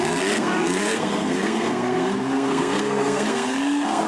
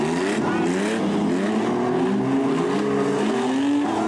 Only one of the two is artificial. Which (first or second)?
first